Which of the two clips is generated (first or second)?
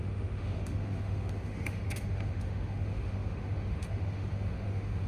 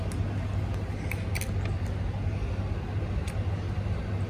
first